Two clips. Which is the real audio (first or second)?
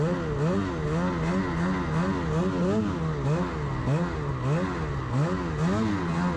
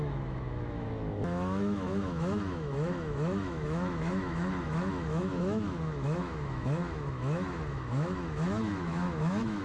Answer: first